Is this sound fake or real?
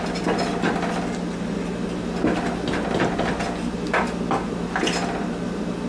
real